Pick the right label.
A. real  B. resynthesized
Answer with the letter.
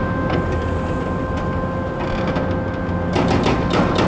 A